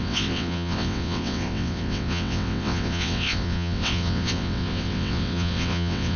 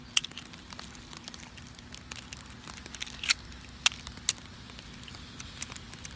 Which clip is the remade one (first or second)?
first